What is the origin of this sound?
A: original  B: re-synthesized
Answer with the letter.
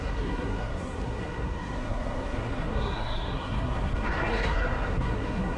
B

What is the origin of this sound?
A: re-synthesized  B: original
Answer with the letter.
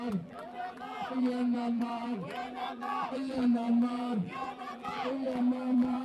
A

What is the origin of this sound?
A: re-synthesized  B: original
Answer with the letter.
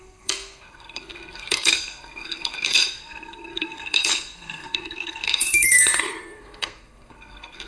A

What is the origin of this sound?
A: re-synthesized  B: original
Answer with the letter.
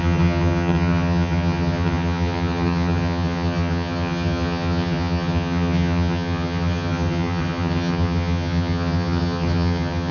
A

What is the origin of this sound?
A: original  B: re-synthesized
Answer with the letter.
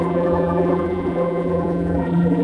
B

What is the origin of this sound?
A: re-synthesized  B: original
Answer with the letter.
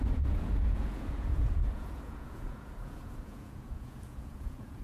A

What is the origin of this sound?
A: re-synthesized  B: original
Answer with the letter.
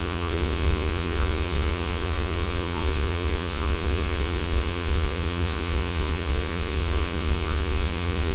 A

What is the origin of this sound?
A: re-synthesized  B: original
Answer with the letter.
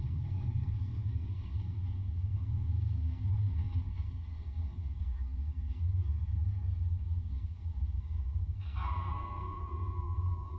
A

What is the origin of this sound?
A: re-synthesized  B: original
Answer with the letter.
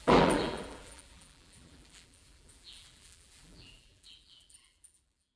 A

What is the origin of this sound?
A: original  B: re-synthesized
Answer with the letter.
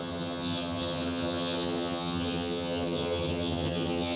B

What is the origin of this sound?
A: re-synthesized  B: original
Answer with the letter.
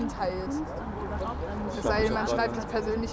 B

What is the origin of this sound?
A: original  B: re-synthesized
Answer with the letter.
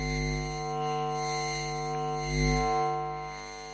A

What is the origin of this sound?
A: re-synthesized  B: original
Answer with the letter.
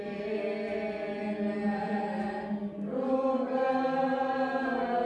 B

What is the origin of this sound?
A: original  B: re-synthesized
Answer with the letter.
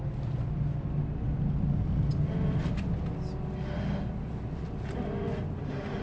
A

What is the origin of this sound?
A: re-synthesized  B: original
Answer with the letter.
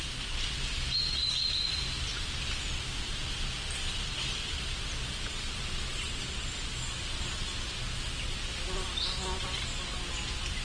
B